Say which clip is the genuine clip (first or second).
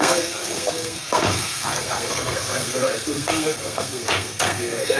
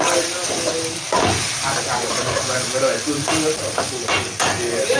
second